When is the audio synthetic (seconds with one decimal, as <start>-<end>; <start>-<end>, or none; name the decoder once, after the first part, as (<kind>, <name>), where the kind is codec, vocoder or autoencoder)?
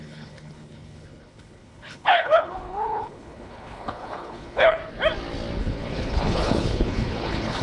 0.0-4.8 (codec, HILCodec); 5.6-7.6